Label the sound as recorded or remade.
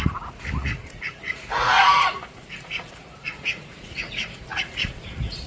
remade